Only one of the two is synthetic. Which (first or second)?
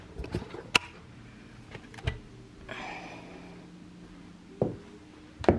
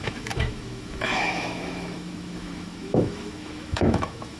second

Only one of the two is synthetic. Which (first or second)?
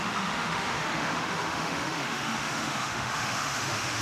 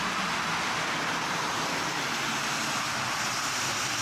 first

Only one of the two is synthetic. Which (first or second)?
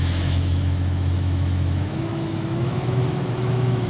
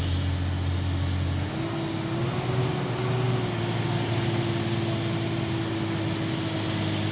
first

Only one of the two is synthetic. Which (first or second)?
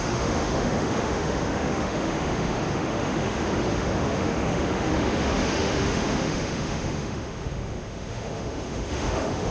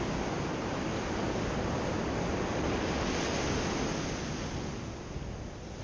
first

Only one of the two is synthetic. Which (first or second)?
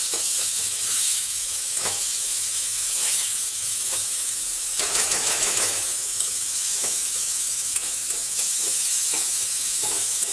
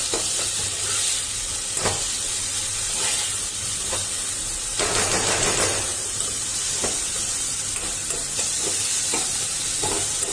first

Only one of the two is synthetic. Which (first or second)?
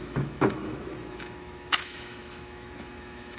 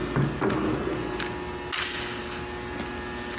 first